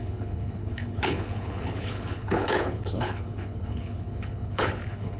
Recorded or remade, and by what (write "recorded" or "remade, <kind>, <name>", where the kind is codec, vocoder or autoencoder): remade, codec, HILCodec